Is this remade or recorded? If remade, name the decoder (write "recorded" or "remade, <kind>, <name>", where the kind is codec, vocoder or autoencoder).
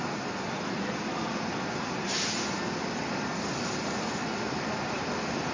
recorded